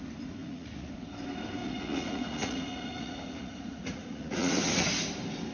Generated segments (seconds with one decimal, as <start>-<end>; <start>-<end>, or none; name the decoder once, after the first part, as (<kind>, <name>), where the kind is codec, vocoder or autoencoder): 0.4-0.9 (vocoder, Vocos); 1.6-4.9